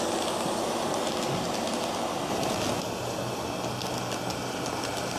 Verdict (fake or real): real